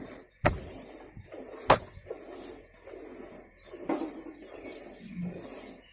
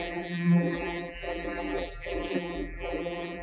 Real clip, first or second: first